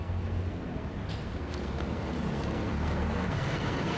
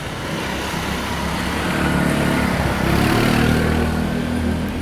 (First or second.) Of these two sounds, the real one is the second